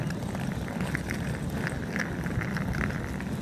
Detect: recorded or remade recorded